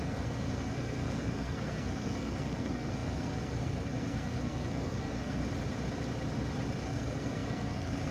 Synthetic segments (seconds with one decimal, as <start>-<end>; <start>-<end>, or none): 0.0-5.4; 6.8-8.1

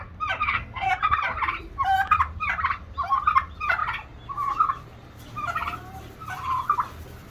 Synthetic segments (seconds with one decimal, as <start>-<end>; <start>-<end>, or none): 0.4-0.9